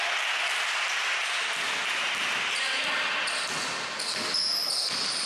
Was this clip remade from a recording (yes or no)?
no